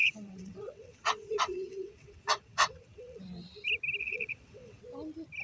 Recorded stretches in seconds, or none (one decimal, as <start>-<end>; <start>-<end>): 3.2-4.0; 4.8-5.4